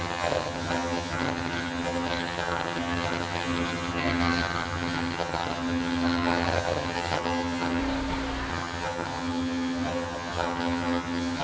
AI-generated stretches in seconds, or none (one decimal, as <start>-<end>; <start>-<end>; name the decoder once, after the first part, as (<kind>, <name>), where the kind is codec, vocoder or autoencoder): 0.0-7.8 (vocoder, HiFi-GAN); 8.5-11.4

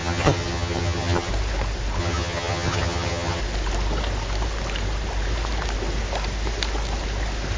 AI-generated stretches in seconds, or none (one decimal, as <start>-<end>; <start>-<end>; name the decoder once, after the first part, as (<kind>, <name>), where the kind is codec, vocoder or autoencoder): 0.0-1.3 (vocoder, HiFi-GAN); 2.0-3.4

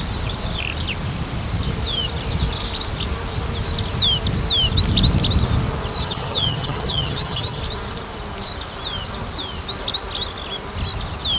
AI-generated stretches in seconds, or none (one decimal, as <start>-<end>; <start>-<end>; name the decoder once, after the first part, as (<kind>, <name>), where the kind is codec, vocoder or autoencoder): 6.0-7.6 (vocoder, HiFi-GAN)

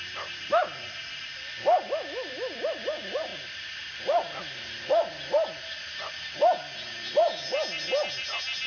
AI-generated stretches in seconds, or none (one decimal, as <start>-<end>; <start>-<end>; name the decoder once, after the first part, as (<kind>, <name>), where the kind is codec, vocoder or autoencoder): none